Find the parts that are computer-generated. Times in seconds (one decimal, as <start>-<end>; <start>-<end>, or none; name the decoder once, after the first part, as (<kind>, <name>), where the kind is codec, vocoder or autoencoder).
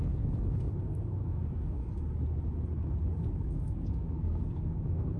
0.0-1.8 (codec, SNAC); 3.4-5.2